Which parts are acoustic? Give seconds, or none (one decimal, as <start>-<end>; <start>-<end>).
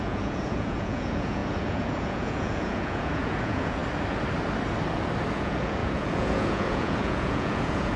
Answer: 3.8-5.3